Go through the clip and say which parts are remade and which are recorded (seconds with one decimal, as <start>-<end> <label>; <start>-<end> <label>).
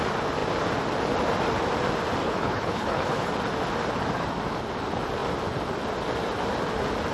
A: 0.0-2.2 recorded; 2.2-3.3 remade; 3.3-7.1 recorded